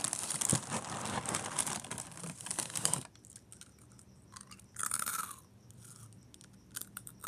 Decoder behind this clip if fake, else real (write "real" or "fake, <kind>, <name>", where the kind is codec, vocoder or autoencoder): real